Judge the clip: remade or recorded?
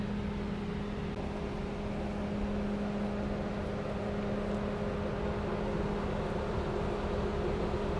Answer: recorded